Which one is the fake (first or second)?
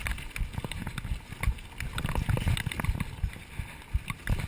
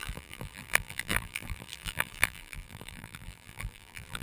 second